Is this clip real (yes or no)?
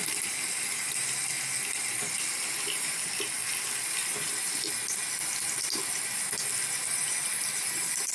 yes